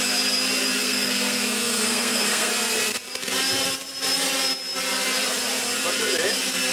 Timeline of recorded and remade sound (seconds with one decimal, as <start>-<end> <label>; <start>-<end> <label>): 0.0-0.8 recorded; 0.8-2.5 remade; 2.5-6.7 recorded